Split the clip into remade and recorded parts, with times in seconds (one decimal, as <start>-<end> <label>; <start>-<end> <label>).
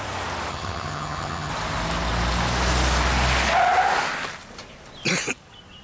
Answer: 0.0-0.5 recorded; 0.5-1.5 remade; 1.5-5.8 recorded